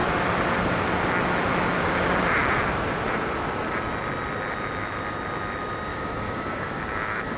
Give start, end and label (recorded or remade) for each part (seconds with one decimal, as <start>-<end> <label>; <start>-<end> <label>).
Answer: 0.0-5.9 recorded; 5.9-6.8 remade; 6.8-7.4 recorded